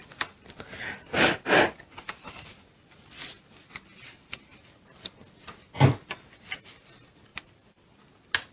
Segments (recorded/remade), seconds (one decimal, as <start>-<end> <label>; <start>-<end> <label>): 0.0-8.5 recorded